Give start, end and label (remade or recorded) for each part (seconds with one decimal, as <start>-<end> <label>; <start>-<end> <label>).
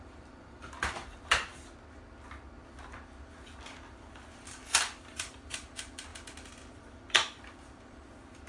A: 0.0-1.5 remade; 1.5-3.3 recorded; 3.3-6.1 remade; 6.1-6.7 recorded; 6.7-8.5 remade